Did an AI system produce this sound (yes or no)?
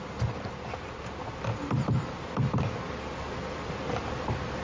no